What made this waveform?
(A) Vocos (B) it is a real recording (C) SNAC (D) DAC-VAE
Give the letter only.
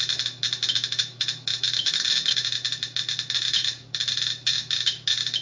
D